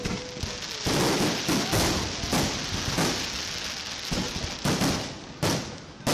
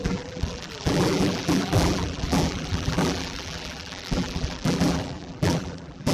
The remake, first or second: second